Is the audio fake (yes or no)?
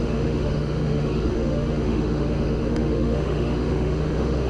yes